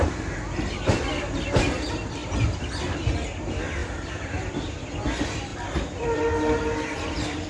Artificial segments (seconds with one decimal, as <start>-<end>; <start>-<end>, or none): 3.8-4.8; 5.5-6.2